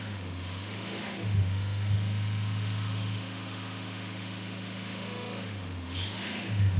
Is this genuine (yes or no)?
no